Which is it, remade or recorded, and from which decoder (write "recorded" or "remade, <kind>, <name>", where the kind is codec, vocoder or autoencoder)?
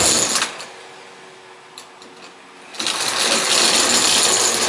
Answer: recorded